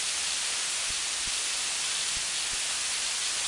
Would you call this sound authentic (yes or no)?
yes